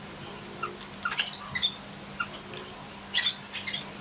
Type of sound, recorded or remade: recorded